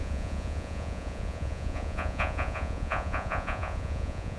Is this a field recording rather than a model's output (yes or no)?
no